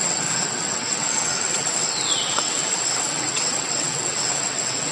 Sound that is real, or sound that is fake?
fake